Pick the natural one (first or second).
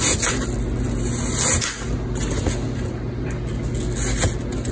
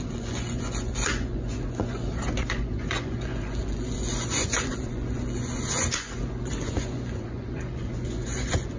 first